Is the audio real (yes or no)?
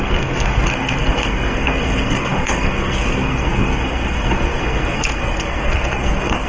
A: no